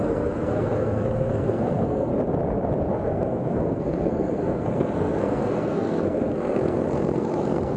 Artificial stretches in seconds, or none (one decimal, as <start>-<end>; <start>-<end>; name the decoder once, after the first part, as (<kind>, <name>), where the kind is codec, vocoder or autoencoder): 0.0-2.1 (codec, SNAC); 2.9-7.8